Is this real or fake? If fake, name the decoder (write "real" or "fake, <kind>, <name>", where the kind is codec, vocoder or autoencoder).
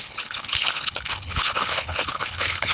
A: fake, codec, HILCodec